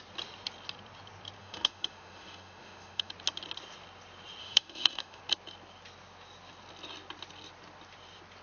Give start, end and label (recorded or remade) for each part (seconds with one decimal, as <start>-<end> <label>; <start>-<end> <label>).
0.0-1.4 recorded; 1.4-3.1 remade; 3.1-4.4 recorded; 4.4-5.2 remade; 5.2-8.4 recorded